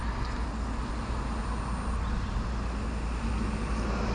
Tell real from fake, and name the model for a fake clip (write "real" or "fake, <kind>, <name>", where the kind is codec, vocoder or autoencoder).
real